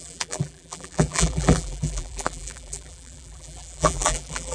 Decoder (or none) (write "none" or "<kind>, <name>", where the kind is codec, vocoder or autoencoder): vocoder, BigVGAN v2